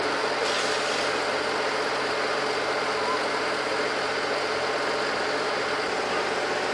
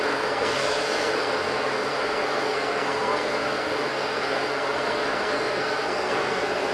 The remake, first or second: second